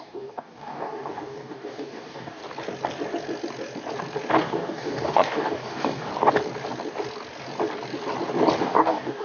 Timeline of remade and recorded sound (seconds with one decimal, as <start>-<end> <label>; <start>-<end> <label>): 0.0-2.4 remade; 2.4-4.4 recorded; 4.4-6.1 remade; 6.1-8.6 recorded; 8.6-9.2 remade